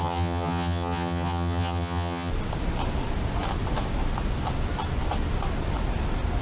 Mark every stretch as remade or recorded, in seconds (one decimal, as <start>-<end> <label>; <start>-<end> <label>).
0.0-2.3 remade; 2.3-6.4 recorded